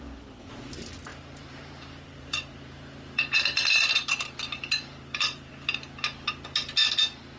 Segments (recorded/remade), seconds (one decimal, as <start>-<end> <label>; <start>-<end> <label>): 0.0-1.1 recorded; 1.1-5.5 remade; 5.5-7.4 recorded